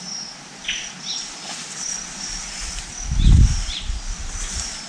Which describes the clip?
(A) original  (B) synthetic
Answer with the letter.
A